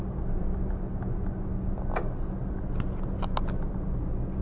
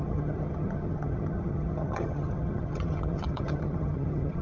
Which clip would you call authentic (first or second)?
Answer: first